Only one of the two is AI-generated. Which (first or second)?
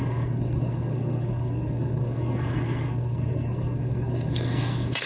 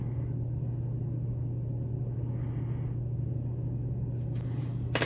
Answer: first